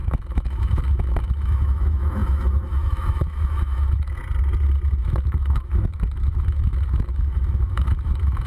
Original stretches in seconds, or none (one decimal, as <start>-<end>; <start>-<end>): 4.2-4.9